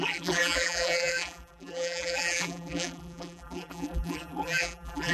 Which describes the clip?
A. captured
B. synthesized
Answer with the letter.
B